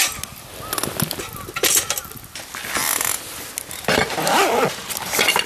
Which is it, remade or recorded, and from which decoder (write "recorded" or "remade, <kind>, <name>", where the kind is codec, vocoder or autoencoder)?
recorded